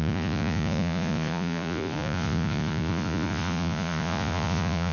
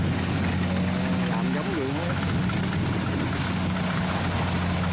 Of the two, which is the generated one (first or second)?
first